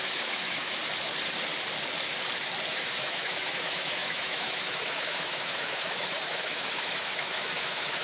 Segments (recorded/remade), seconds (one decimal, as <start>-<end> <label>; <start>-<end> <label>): 0.0-0.8 remade; 0.8-2.9 recorded; 2.9-8.0 remade